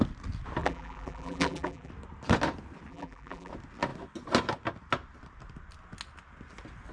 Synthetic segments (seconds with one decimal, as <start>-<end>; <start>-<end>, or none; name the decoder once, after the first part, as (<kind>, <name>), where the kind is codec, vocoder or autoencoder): 0.6-1.9 (vocoder, BigVGAN v2); 2.9-3.5